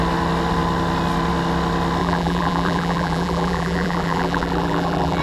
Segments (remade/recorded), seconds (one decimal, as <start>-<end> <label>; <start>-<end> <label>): 0.0-2.0 recorded; 2.0-5.2 remade